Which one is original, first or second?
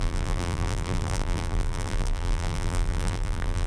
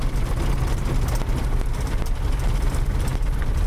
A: second